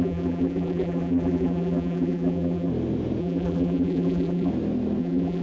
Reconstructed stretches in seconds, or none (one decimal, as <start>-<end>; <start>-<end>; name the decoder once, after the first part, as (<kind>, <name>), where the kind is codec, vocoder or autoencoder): 0.0-2.7 (vocoder, BigVGAN v2); 3.2-4.5; 5.0-5.4